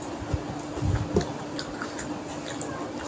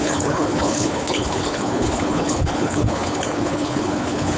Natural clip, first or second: first